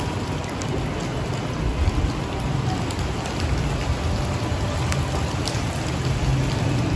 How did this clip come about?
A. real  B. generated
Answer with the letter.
A